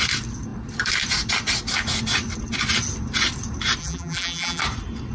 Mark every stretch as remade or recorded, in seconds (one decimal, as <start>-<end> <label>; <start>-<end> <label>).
0.0-3.8 recorded; 3.8-4.6 remade; 4.6-5.1 recorded